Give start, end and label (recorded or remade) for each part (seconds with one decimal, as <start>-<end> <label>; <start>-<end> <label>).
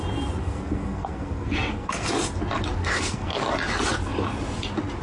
0.0-0.4 recorded; 0.4-2.1 remade; 2.1-2.8 recorded; 2.8-3.4 remade; 3.4-5.0 recorded